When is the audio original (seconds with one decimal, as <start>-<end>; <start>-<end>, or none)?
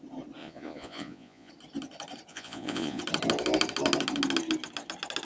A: 0.0-0.4; 1.5-2.3; 3.0-5.2